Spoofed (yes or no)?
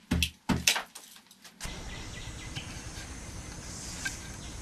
no